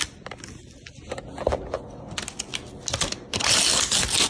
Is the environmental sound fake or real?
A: real